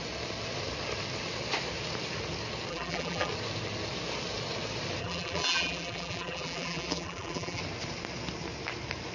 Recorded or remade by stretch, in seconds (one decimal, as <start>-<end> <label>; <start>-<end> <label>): 0.0-2.7 recorded; 2.7-3.3 remade; 3.3-5.0 recorded; 5.0-7.6 remade; 7.6-9.1 recorded